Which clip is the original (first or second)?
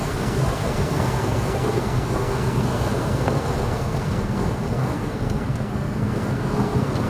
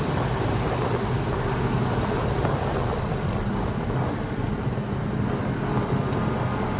second